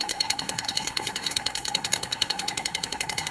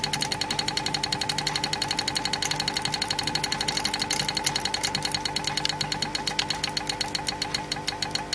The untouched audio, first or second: second